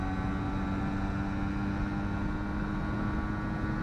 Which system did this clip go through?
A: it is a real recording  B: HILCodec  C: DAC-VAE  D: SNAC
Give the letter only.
A